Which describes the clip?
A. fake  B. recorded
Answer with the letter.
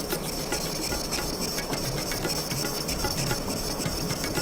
B